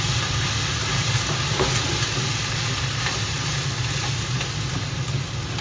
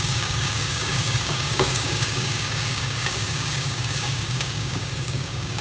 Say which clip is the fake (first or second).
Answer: second